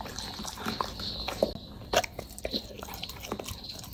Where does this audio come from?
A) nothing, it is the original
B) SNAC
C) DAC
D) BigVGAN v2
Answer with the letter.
A